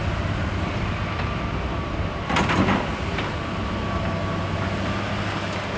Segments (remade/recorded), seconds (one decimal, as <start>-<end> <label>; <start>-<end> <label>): 0.0-5.8 recorded